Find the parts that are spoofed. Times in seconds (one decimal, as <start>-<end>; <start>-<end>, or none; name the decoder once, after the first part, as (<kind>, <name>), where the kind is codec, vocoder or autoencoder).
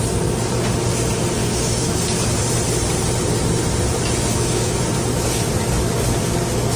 1.4-2.0 (autoencoder, DAC-VAE); 4.3-4.8